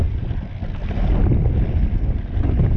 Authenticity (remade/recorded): recorded